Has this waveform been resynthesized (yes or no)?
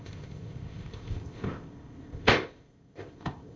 yes